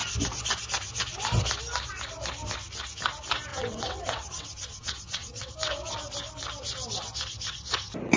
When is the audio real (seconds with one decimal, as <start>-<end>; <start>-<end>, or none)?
0.0-3.5; 5.5-8.2